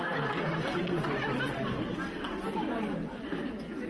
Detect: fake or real real